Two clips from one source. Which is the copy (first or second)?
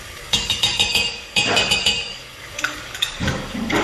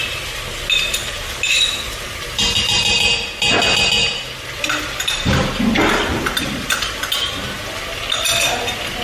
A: first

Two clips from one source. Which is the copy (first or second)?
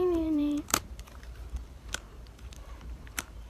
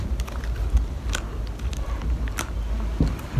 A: first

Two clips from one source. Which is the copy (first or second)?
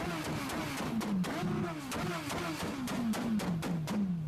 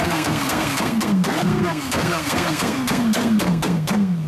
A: second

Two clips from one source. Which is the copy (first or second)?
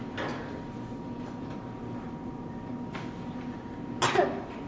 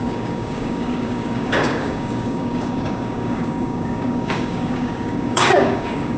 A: second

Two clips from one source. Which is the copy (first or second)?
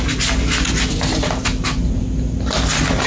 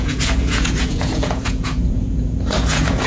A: second